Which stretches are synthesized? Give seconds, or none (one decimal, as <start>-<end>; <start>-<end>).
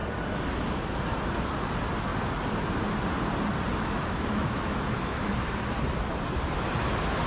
3.7-5.3